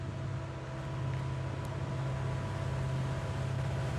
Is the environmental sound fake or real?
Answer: real